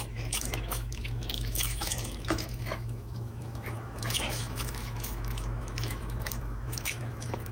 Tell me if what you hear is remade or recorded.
remade